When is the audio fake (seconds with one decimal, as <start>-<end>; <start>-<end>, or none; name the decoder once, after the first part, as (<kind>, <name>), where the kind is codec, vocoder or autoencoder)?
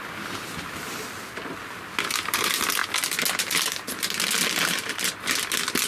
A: none